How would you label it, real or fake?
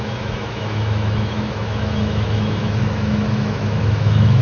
fake